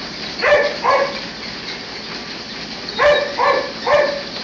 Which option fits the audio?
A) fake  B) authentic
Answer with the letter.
B